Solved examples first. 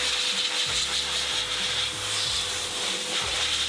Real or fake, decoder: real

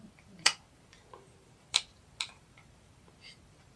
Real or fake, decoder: fake, vocoder, BigVGAN v2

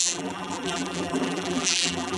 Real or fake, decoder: fake, vocoder, BigVGAN v2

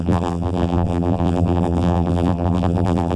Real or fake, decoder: fake, vocoder, BigVGAN v2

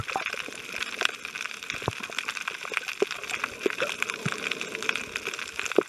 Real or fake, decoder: real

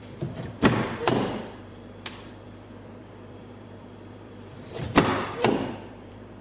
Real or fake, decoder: fake, vocoder, BigVGAN v2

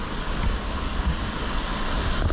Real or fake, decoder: real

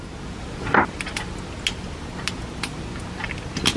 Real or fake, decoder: real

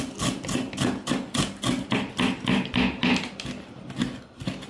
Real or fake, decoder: real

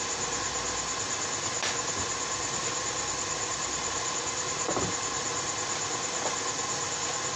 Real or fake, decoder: real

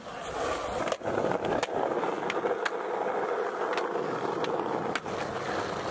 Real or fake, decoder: real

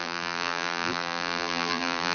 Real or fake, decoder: fake, vocoder, BigVGAN v2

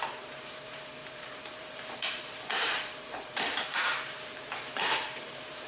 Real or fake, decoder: fake, vocoder, BigVGAN v2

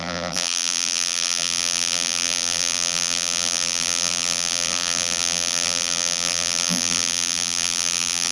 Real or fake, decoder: fake, vocoder, BigVGAN v2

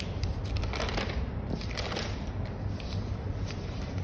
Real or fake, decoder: real